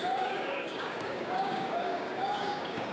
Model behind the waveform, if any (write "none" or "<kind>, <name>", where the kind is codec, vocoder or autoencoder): codec, DAC